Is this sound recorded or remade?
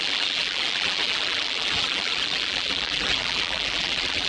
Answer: remade